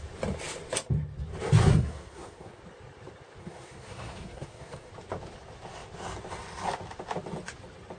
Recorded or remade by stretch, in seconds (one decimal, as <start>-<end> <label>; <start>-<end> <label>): 0.0-1.6 recorded; 1.6-2.6 remade; 2.6-3.4 recorded; 3.4-4.9 remade; 4.9-8.0 recorded